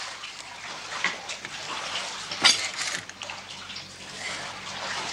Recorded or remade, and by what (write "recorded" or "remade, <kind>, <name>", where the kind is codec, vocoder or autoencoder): recorded